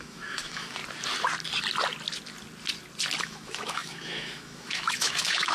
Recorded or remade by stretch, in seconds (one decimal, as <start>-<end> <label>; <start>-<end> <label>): 0.0-0.8 remade; 0.8-3.2 recorded; 3.2-5.5 remade